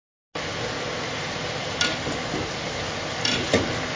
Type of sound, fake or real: real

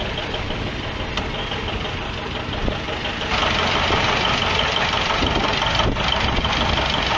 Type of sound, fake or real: real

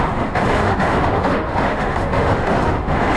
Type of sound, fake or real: fake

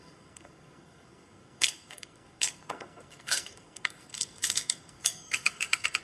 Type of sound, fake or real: fake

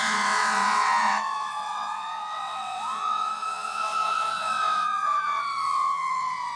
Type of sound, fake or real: fake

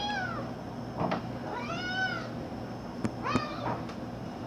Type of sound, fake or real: real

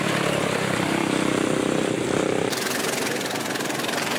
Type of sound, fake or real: real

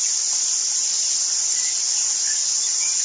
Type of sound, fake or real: real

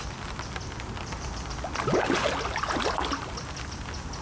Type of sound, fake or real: real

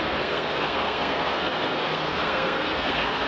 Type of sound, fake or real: fake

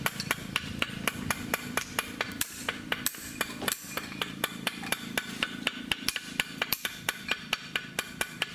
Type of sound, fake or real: fake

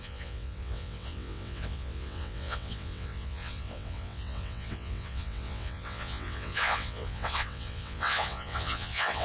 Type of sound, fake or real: fake